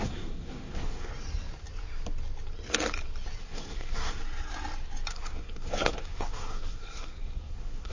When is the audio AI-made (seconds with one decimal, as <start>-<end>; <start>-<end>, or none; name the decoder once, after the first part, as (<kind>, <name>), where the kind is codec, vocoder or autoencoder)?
0.0-1.1 (codec, SNAC); 3.4-4.2; 5.1-7.9